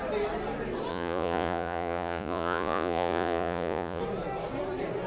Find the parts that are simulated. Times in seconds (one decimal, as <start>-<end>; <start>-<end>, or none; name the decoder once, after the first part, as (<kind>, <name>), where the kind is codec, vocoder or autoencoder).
0.9-4.0 (vocoder, Vocos)